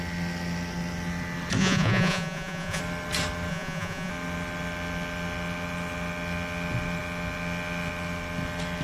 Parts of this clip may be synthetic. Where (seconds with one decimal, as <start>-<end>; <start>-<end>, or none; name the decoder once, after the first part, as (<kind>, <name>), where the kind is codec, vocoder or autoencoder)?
1.6-2.8 (vocoder, Vocos); 3.5-4.1